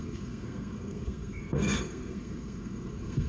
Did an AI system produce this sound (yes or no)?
yes